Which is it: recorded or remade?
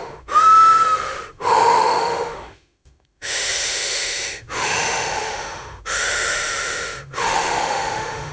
remade